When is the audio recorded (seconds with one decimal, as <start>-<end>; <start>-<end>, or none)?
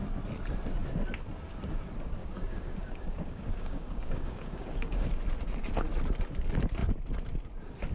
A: 0.0-2.2; 5.1-7.9